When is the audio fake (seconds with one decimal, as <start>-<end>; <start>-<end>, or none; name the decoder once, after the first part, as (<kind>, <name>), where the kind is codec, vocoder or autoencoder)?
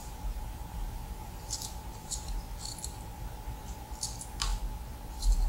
0.0-2.1 (vocoder, BigVGAN v2)